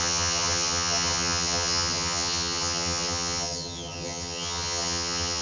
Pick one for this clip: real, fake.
fake